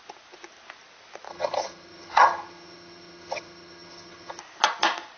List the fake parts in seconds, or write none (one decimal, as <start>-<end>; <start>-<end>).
1.3-4.4